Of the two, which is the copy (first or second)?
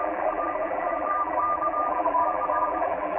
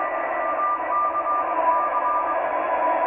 first